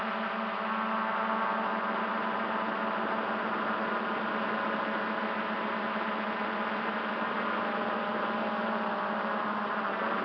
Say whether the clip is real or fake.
real